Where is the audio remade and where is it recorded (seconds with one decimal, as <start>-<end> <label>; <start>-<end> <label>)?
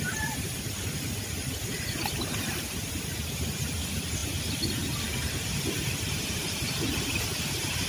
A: 0.0-7.9 recorded